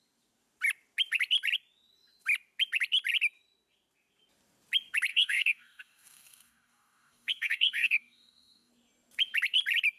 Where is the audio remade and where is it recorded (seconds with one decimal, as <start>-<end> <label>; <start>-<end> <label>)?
0.0-5.1 recorded; 5.1-8.7 remade; 8.7-10.0 recorded